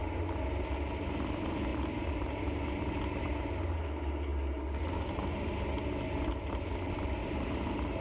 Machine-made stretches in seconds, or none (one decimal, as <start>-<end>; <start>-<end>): 1.7-2.3; 7.2-8.0